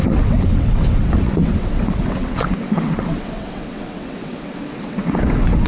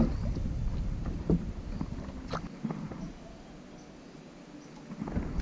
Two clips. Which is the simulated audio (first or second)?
first